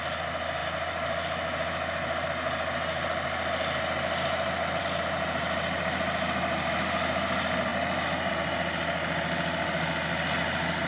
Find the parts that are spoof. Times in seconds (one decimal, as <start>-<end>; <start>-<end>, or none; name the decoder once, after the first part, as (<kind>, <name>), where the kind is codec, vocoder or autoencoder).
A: none